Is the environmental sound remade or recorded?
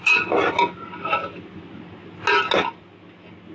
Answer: recorded